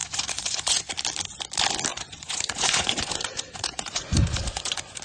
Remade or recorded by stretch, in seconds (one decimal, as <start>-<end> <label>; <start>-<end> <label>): 0.0-0.9 remade; 0.9-1.9 recorded; 1.9-5.0 remade